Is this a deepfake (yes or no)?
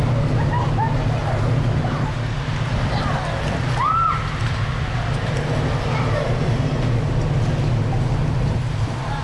no